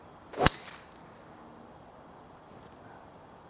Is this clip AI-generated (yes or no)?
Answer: no